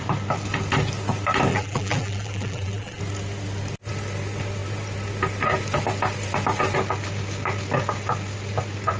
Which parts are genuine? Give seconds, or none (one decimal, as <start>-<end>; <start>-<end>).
0.0-1.5; 3.0-9.0

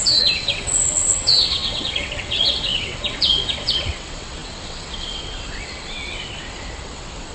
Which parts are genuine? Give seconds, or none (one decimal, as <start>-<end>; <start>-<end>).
none

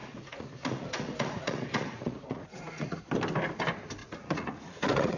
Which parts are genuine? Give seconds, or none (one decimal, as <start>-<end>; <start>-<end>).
3.0-4.0

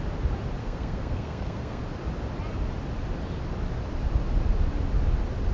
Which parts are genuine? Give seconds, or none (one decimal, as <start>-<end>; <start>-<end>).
0.0-0.6; 1.8-5.5

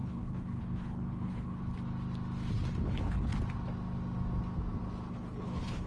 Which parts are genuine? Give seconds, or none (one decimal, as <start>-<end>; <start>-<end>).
1.6-2.9; 3.3-5.1

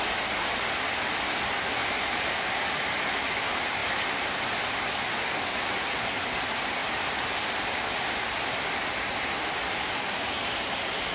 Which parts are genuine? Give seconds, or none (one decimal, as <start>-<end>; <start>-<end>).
0.0-1.8; 2.7-11.1

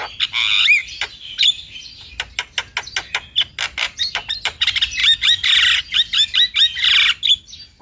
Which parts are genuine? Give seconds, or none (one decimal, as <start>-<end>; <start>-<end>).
0.0-5.0; 5.5-7.8

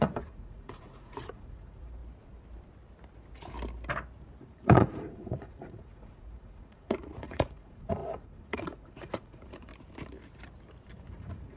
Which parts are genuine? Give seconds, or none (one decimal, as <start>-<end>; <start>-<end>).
2.0-4.4; 9.7-11.1